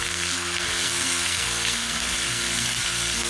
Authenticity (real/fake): fake